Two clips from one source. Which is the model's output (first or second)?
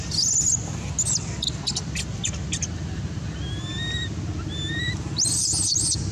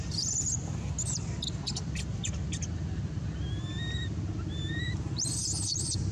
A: second